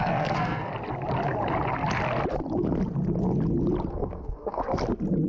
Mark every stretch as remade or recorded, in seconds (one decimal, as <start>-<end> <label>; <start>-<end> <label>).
0.0-0.7 remade; 0.7-3.9 recorded; 3.9-4.6 remade; 4.6-5.3 recorded